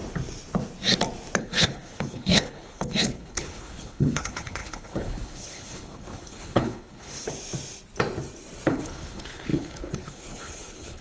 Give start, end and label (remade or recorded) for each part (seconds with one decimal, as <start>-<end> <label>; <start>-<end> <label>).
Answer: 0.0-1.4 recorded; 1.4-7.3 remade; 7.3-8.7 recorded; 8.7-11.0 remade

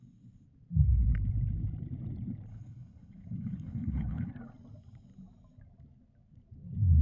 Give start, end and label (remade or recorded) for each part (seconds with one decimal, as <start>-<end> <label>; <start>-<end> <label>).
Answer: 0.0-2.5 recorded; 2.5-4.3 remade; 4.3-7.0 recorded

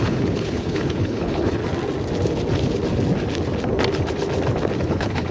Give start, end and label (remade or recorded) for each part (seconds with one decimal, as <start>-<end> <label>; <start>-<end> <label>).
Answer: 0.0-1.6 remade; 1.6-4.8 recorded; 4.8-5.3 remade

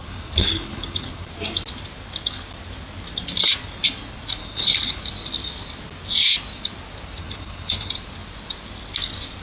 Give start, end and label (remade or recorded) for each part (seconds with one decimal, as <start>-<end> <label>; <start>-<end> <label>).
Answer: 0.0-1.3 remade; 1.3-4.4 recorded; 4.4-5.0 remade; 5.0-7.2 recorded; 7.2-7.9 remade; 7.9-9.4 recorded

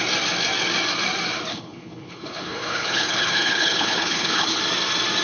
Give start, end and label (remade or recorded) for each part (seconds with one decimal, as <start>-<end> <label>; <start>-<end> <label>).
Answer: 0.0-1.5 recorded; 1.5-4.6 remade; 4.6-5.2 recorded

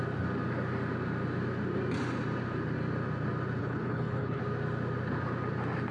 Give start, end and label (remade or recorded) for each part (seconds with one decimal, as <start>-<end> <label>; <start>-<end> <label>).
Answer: 0.0-3.6 recorded; 3.6-4.4 remade; 4.4-5.9 recorded